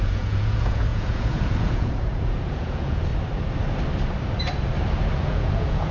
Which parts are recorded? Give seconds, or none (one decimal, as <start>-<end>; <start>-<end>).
3.1-5.1

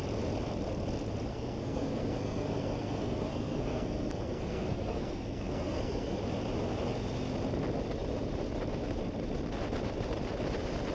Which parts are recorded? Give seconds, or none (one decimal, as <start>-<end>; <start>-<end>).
0.0-1.3; 6.2-10.9

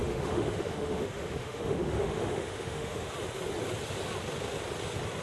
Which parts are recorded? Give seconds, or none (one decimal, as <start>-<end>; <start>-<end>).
3.1-5.2

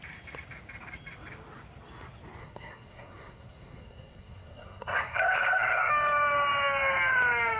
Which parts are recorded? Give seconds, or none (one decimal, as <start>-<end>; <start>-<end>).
0.0-2.4; 5.9-7.6